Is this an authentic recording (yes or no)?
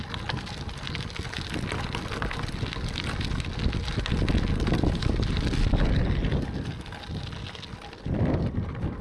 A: yes